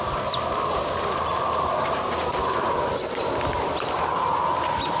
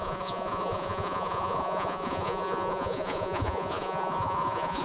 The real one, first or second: first